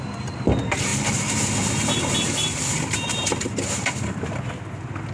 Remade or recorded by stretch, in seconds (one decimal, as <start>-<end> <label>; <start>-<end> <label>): 0.0-5.1 recorded